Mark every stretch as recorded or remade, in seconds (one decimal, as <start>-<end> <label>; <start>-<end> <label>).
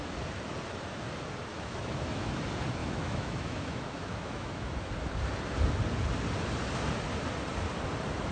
0.0-1.5 recorded; 1.5-2.4 remade; 2.4-2.8 recorded; 2.8-4.9 remade; 4.9-8.3 recorded